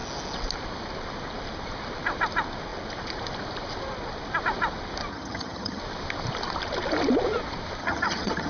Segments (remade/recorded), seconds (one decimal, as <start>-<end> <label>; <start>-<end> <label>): 0.0-5.1 recorded; 5.1-5.8 remade; 5.8-7.8 recorded; 7.8-8.5 remade